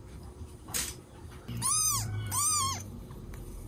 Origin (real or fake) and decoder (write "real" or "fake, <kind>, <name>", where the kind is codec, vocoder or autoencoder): fake, vocoder, BigVGAN v2